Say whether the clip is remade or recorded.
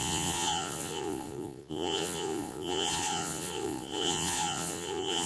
remade